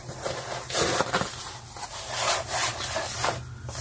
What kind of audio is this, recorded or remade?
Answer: recorded